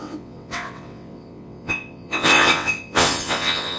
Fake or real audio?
fake